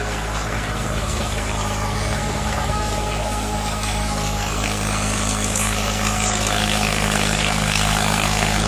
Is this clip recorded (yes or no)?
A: no